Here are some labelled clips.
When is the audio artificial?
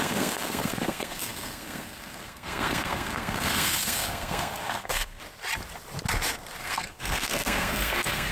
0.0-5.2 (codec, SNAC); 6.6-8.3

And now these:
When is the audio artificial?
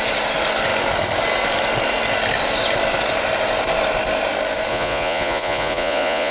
4.7-6.3 (vocoder, Vocos)